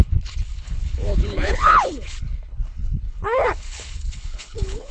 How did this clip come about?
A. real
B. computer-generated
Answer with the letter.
B